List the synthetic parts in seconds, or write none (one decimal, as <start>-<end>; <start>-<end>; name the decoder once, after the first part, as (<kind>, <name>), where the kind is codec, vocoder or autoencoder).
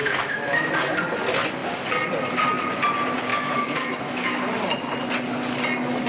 0.0-0.7 (autoencoder, DAC-VAE); 3.3-4.4